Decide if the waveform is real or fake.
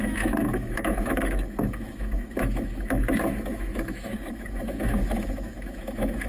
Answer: fake